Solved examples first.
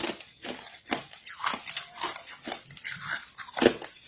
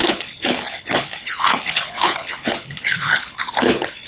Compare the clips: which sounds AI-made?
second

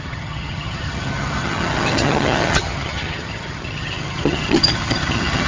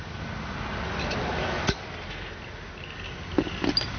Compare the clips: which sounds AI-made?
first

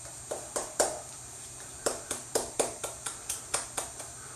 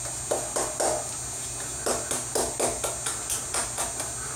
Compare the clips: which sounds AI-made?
first